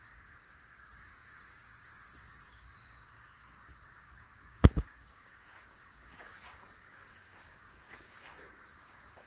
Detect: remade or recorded remade